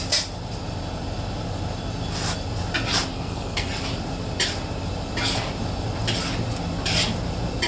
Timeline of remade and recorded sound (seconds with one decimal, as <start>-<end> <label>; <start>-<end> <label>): 0.0-3.1 recorded; 3.1-3.7 remade; 3.7-7.7 recorded